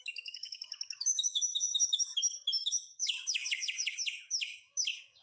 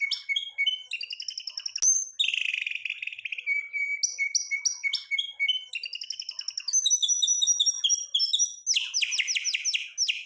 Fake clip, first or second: first